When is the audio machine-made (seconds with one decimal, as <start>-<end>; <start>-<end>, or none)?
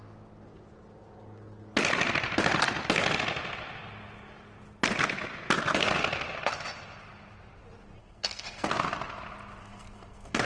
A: 8.0-8.7; 9.6-10.4